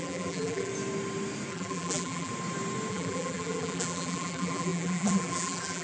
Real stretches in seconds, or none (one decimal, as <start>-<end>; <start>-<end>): 0.7-1.5; 2.3-2.9